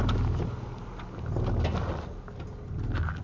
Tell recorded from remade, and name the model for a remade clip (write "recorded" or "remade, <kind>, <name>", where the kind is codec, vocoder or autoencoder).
recorded